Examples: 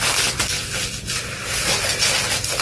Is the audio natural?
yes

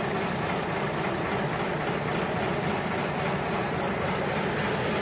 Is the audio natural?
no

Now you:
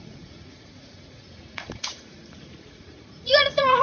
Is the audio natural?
no